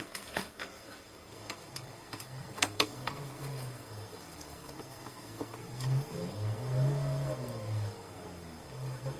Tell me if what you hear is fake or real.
fake